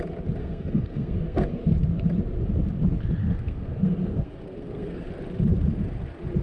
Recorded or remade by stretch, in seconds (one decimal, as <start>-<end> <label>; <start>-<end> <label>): 0.0-0.4 recorded; 0.4-1.6 remade; 1.6-3.2 recorded; 3.2-5.1 remade; 5.1-6.4 recorded